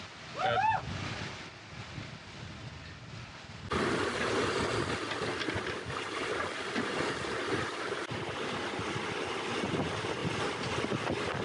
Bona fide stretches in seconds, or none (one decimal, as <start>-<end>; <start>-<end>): 0.0-11.4